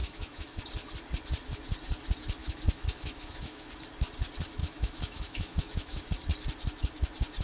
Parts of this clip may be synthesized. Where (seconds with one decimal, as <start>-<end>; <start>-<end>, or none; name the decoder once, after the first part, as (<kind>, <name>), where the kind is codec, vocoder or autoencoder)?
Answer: 0.0-0.6 (autoencoder, DAC-VAE); 2.4-3.7; 4.6-6.0